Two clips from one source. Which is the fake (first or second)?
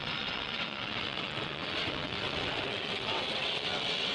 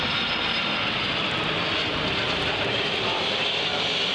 first